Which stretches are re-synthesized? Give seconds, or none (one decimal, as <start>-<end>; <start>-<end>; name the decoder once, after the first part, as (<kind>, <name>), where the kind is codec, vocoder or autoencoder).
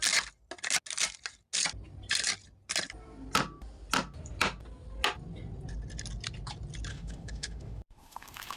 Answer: 6.9-8.6 (autoencoder, DAC-VAE)